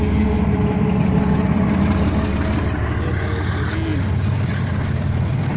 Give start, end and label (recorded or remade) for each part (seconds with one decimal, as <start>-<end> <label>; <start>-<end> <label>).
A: 0.0-5.6 recorded